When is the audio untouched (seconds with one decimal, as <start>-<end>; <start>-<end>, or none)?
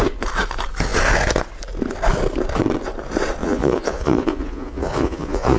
0.0-3.4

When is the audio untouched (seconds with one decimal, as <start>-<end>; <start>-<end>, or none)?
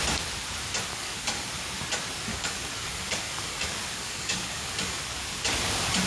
0.0-0.9; 1.5-2.3; 5.0-6.1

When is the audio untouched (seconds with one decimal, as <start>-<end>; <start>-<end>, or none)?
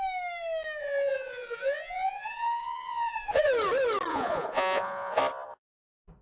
0.0-0.8; 3.5-4.1; 5.2-6.2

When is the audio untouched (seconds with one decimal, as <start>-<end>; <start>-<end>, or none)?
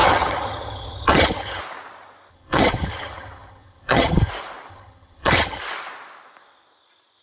1.6-2.3; 4.3-4.7; 5.6-7.2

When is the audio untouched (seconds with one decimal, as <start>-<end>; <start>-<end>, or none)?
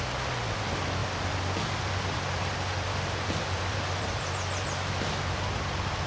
0.0-1.0; 4.3-6.1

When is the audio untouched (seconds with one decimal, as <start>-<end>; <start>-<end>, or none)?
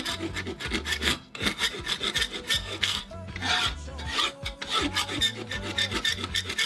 0.0-0.9; 1.6-2.6; 3.1-6.7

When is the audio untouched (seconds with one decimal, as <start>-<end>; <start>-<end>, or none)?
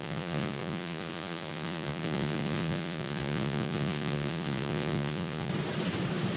5.5-6.4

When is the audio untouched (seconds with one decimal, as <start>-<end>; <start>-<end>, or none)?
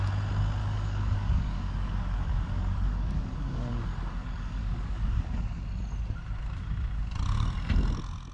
0.0-0.6; 5.6-8.3